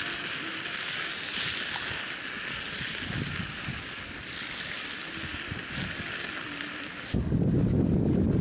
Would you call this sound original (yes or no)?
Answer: yes